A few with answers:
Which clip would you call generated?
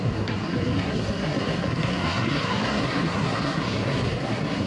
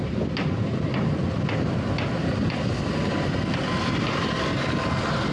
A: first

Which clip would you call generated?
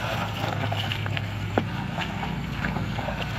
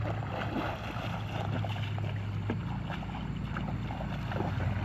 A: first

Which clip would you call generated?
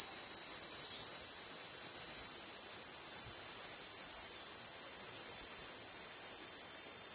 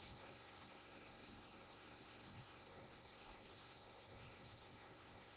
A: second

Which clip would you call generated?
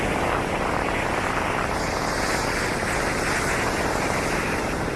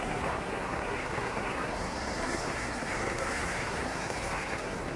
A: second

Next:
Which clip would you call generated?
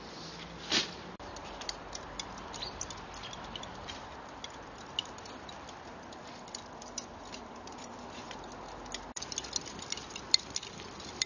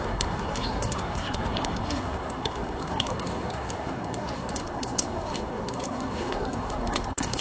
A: second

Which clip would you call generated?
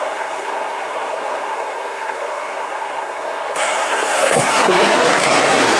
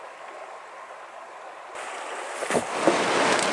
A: first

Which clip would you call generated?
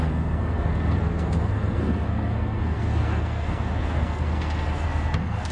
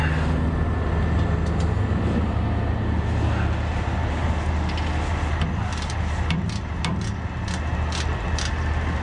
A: first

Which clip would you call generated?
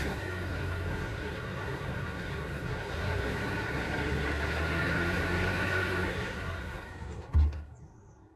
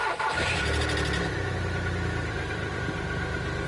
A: first